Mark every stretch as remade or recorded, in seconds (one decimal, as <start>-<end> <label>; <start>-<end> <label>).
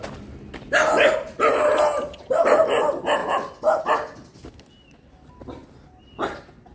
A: 0.0-6.7 recorded